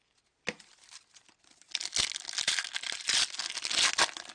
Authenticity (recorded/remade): recorded